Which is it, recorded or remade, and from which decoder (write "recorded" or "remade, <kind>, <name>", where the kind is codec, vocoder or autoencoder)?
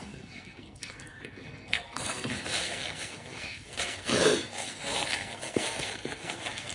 remade, codec, SNAC